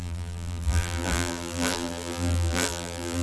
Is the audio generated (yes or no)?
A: yes